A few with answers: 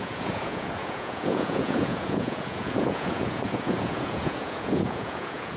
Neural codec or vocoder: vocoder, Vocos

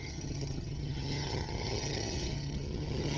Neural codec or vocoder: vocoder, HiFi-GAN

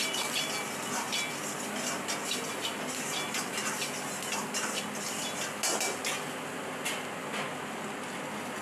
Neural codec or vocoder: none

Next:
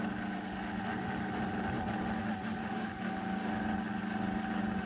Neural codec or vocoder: none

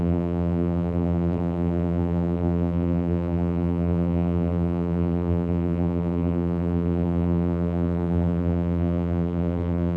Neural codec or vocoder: vocoder, BigVGAN v2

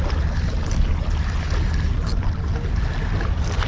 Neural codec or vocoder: none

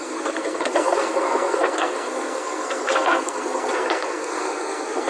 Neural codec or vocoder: codec, SNAC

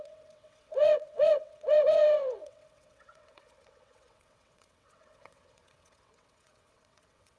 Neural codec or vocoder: vocoder, WaveNeXt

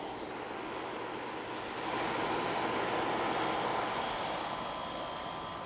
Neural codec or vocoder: none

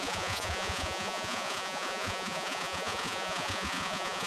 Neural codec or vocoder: vocoder, Vocos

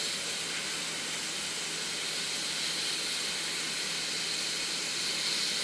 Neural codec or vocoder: none